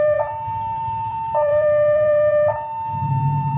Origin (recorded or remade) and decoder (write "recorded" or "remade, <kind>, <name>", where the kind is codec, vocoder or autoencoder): remade, vocoder, BigVGAN v2